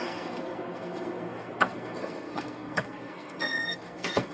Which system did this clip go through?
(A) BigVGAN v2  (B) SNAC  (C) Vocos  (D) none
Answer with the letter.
B